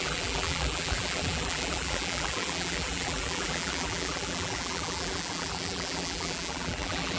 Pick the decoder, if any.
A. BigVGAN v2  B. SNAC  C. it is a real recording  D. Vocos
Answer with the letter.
A